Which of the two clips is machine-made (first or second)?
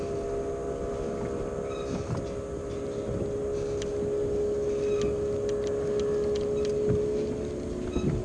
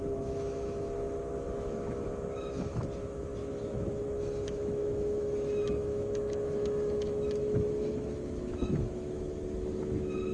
second